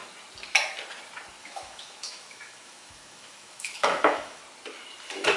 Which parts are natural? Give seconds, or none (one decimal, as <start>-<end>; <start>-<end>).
0.0-1.4; 4.4-5.4

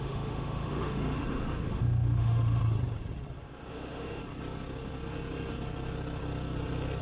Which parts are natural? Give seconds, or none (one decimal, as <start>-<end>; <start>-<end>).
2.6-3.7; 4.2-7.0